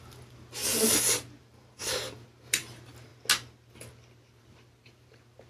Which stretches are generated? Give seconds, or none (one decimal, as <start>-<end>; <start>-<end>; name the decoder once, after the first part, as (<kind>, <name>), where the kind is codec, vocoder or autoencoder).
0.0-0.6 (vocoder, BigVGAN v2); 1.4-1.8; 2.5-3.1; 4.4-5.5